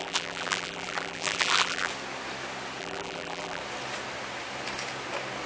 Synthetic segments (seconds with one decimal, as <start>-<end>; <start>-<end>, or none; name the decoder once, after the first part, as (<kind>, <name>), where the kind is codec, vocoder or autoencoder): 0.0-1.9 (vocoder, BigVGAN v2); 2.8-3.6